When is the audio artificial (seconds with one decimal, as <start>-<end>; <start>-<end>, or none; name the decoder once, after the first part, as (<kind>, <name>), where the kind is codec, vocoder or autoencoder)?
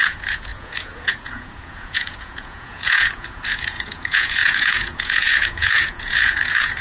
0.0-6.8 (vocoder, Vocos)